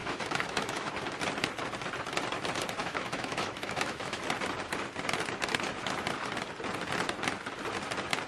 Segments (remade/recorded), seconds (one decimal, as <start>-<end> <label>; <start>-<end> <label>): 0.0-0.9 remade; 0.9-2.8 recorded; 2.8-4.2 remade; 4.2-8.3 recorded